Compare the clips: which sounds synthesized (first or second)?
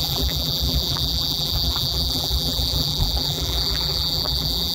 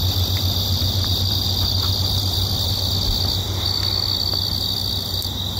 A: first